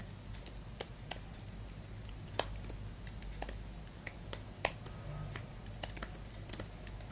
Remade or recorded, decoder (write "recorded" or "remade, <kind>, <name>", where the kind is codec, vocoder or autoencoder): recorded